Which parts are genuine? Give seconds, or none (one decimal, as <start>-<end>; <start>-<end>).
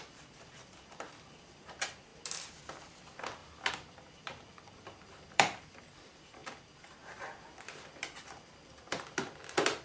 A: 2.1-2.9; 6.4-7.6